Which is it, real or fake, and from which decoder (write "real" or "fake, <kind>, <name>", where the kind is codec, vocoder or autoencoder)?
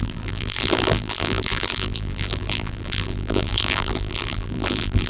fake, vocoder, BigVGAN v2